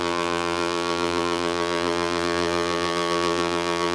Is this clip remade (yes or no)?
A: yes